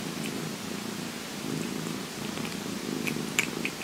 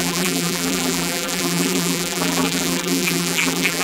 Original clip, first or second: first